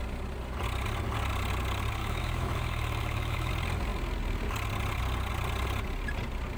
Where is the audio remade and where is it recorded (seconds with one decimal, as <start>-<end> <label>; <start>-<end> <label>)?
0.0-2.0 recorded; 2.0-3.5 remade; 3.5-6.6 recorded